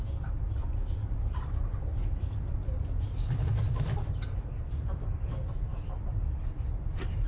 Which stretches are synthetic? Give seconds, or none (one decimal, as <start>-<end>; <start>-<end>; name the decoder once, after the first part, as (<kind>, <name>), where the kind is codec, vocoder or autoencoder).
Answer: 0.0-1.0 (vocoder, BigVGAN v2); 3.5-7.3